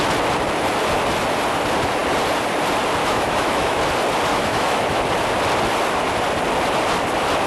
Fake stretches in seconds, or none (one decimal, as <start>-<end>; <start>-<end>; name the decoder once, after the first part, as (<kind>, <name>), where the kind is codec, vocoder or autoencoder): 3.0-3.8 (autoencoder, DAC-VAE); 4.3-5.0